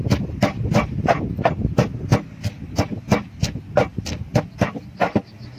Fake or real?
real